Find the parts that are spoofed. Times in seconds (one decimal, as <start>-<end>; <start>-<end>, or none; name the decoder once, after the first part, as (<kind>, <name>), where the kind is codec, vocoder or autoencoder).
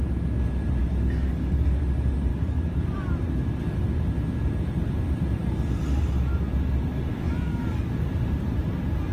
0.8-1.8 (codec, DAC); 2.3-2.8; 7.1-7.9